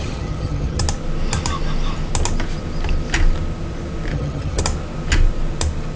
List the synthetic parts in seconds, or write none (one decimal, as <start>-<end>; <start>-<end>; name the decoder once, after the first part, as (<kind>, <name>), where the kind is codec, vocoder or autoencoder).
0.0-0.8 (vocoder, HiFi-GAN); 4.1-4.6